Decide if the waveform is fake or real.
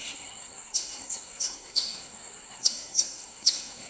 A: fake